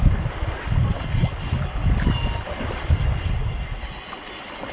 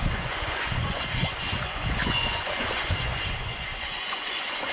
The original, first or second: first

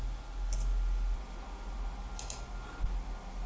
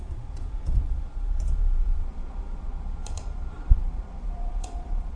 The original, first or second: first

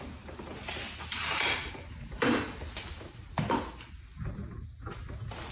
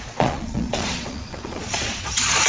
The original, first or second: first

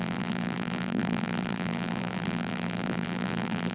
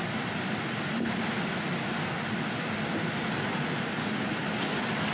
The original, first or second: second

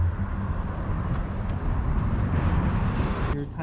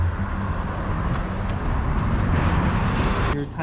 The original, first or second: second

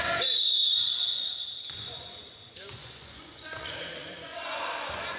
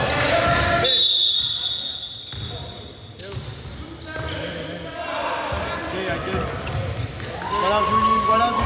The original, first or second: second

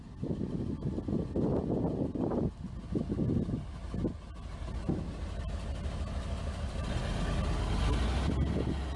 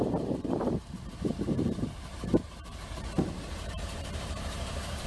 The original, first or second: first